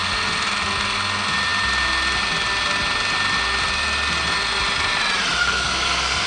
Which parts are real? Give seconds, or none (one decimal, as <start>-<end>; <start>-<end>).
0.0-5.4